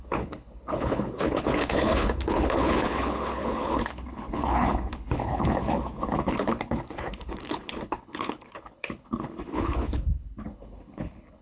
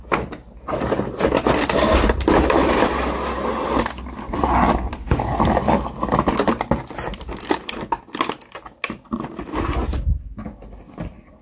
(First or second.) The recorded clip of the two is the second